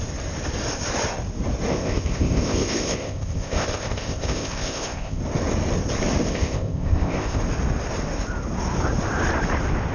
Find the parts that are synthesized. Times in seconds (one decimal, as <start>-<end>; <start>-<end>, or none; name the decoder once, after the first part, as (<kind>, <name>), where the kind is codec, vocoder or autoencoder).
1.7-5.2 (codec, ZipCodec); 6.3-7.4